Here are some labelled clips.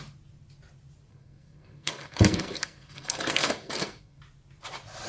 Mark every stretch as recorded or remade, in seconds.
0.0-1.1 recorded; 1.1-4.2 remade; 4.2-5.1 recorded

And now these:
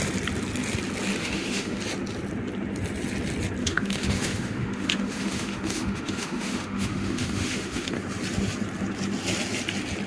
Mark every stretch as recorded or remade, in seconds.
0.0-1.2 recorded; 1.2-1.8 remade; 1.8-3.6 recorded; 3.6-7.9 remade; 7.9-10.1 recorded

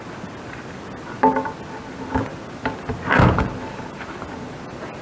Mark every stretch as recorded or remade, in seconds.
0.0-5.0 recorded